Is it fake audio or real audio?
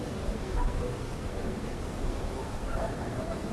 fake